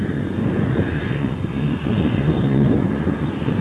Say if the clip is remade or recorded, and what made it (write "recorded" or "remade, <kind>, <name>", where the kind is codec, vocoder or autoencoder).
remade, vocoder, Vocos